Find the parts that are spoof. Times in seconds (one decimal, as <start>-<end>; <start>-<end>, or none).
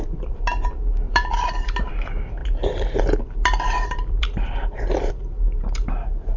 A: 0.0-6.4